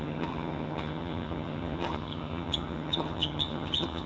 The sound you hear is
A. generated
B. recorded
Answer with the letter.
A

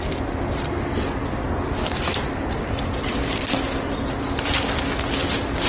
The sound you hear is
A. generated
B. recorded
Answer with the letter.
B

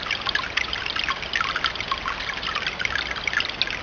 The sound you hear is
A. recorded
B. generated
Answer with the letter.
A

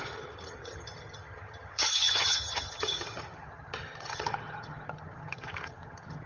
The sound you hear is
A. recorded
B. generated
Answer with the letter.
B